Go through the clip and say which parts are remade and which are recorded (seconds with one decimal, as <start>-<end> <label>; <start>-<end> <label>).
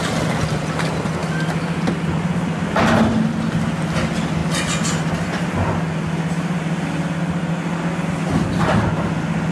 0.0-9.5 recorded